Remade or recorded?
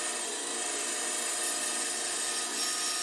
recorded